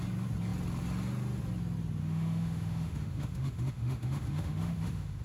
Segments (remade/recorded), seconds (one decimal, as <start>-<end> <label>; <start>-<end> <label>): 0.0-2.0 recorded; 2.0-5.2 remade